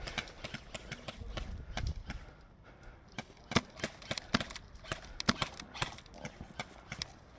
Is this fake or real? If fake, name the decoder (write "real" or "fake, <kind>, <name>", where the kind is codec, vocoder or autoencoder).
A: real